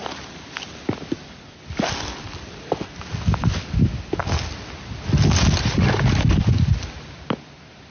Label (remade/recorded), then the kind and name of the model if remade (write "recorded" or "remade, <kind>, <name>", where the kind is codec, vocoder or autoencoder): recorded